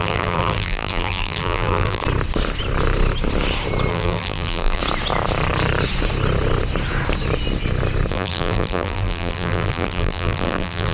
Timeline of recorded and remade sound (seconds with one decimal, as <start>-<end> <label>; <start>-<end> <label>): 0.0-2.0 remade; 2.0-3.9 recorded; 3.9-4.8 remade; 4.8-8.1 recorded; 8.1-10.9 remade